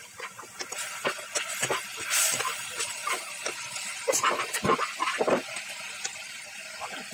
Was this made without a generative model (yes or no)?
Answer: yes